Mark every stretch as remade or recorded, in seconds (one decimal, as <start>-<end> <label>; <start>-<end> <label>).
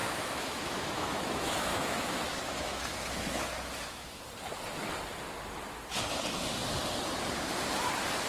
0.0-4.2 remade; 4.2-8.3 recorded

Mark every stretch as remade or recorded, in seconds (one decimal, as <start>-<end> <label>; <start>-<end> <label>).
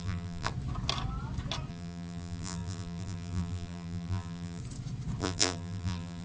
0.0-0.5 remade; 0.5-1.7 recorded; 1.7-4.6 remade; 4.6-5.2 recorded; 5.2-6.2 remade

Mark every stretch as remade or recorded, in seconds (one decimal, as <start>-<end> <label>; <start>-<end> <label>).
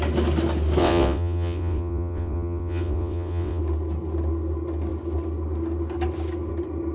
0.0-0.8 recorded; 0.8-3.6 remade; 3.6-6.9 recorded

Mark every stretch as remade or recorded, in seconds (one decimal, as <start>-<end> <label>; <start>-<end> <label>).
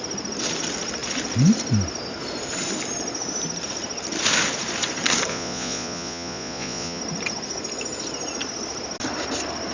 0.0-5.3 recorded; 5.3-7.0 remade; 7.0-9.7 recorded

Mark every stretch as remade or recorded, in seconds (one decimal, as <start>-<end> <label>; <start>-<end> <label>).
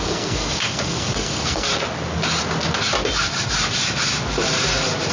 0.0-1.7 remade; 1.7-5.1 recorded